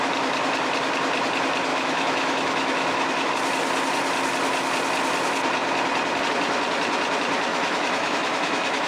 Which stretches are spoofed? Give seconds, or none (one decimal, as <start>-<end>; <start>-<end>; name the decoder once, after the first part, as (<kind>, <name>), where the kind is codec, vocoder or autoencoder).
1.7-3.3 (autoencoder, DAC-VAE); 7.5-8.9